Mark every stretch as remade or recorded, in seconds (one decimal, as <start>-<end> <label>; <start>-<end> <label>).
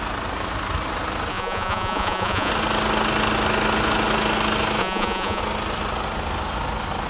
0.0-1.3 recorded; 1.3-2.5 remade; 2.5-4.8 recorded; 4.8-5.4 remade; 5.4-7.1 recorded